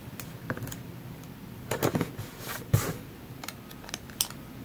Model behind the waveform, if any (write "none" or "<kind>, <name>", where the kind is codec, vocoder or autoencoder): none